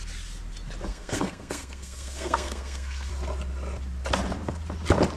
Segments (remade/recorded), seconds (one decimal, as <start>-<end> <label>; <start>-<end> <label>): 0.0-0.9 recorded; 0.9-3.1 remade; 3.1-5.2 recorded